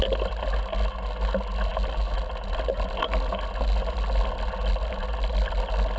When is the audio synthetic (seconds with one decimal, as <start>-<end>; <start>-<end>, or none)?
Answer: none